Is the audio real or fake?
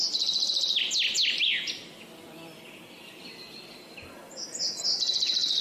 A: real